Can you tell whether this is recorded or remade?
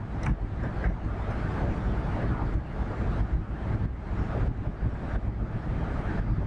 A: recorded